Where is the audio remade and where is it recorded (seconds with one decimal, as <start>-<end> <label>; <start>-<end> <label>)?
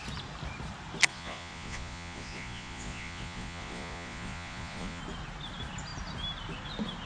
0.0-1.1 recorded; 1.1-5.0 remade; 5.0-7.1 recorded